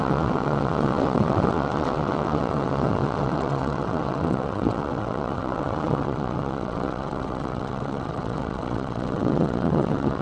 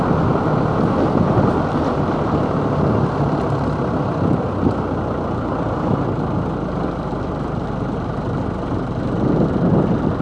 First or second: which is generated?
first